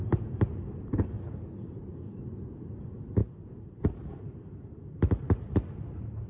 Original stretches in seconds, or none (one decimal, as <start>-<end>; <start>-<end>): 0.0-6.3